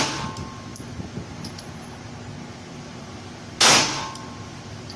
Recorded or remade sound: recorded